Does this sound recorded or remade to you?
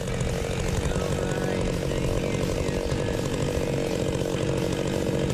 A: recorded